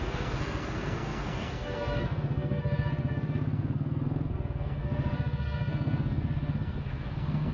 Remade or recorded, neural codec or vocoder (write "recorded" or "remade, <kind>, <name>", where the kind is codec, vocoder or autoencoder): remade, codec, SNAC